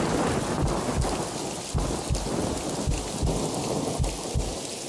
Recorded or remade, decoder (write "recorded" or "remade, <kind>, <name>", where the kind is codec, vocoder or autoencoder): recorded